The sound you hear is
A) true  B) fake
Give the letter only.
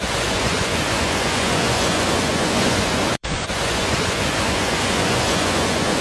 B